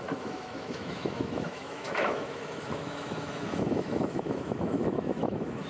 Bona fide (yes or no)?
no